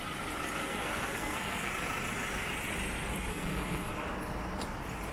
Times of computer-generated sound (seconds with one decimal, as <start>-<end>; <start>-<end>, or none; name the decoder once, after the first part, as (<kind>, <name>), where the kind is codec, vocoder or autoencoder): 0.6-1.7 (codec, SNAC); 3.3-3.9